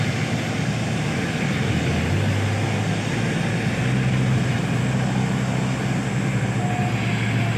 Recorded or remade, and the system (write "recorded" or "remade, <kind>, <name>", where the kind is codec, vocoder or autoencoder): recorded